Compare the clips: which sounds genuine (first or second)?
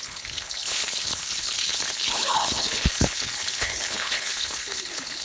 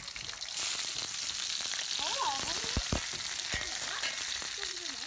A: second